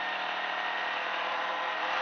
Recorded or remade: remade